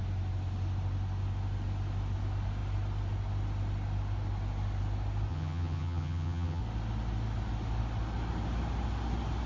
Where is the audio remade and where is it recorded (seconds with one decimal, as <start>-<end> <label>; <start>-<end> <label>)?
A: 0.0-5.3 recorded; 5.3-6.6 remade; 6.6-9.5 recorded